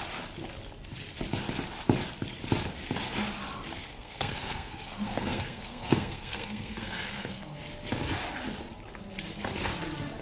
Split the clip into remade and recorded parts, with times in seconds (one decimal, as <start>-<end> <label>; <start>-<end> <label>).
0.0-3.9 recorded; 3.9-7.6 remade; 7.6-10.2 recorded